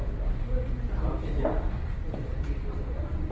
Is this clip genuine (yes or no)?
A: yes